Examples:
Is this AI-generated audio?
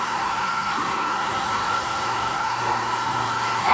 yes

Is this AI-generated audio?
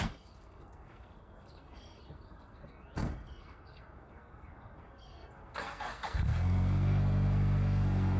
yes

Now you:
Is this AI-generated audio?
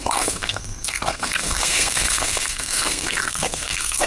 yes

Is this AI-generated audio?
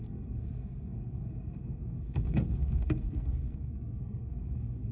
yes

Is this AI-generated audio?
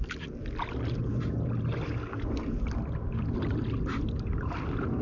no